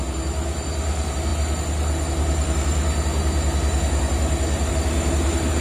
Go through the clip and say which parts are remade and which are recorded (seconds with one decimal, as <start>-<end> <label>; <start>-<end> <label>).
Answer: 0.0-5.6 recorded